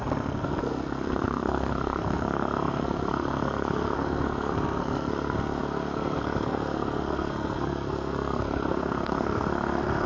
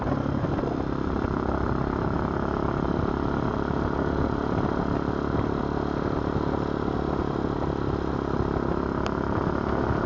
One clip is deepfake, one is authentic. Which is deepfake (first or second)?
first